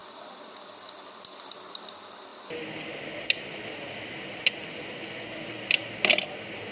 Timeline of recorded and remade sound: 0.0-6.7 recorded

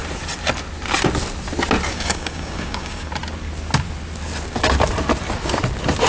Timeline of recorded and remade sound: 0.0-1.9 recorded; 1.9-3.1 remade; 3.1-6.1 recorded

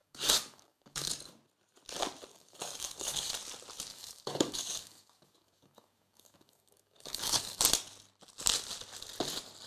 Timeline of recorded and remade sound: 0.0-1.1 remade; 1.1-2.3 recorded; 2.3-3.3 remade; 3.3-3.9 recorded; 3.9-7.6 remade; 7.6-9.7 recorded

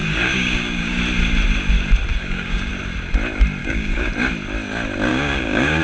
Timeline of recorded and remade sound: 0.0-1.0 remade; 1.0-2.1 recorded; 2.1-2.7 remade; 2.7-3.6 recorded; 3.6-4.1 remade; 4.1-5.1 recorded; 5.1-5.8 remade

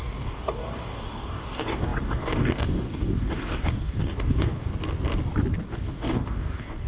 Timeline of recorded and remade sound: 0.0-4.7 remade; 4.7-5.6 recorded; 5.6-6.9 remade

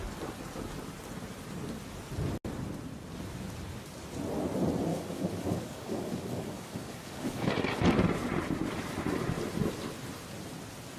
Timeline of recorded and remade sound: 0.0-4.9 recorded; 4.9-7.5 remade; 7.5-11.0 recorded

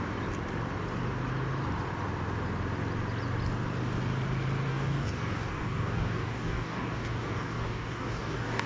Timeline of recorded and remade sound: 0.0-4.7 recorded; 4.7-8.7 remade

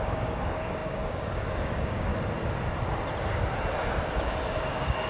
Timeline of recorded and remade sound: 0.0-2.1 remade; 2.1-4.6 recorded; 4.6-5.1 remade